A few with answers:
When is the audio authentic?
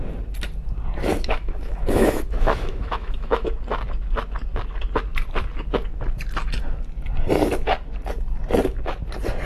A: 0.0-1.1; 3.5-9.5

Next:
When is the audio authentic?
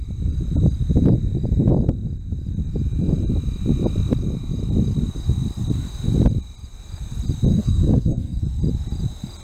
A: 0.0-7.5; 8.4-9.4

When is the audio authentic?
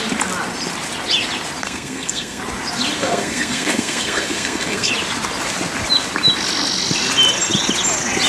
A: 0.0-1.6; 2.4-3.0; 4.9-8.3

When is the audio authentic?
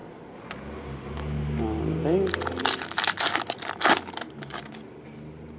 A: 0.0-5.6